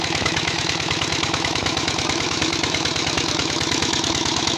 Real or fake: fake